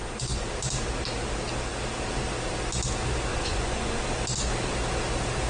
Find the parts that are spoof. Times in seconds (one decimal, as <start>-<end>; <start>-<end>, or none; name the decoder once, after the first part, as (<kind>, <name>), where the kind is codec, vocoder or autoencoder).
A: 0.0-0.5 (vocoder, Vocos); 3.3-4.0